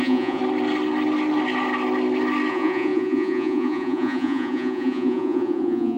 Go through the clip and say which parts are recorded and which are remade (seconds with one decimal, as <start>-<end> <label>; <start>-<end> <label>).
0.0-0.4 remade; 0.4-2.5 recorded; 2.5-6.0 remade